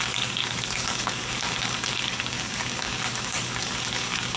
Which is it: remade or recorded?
remade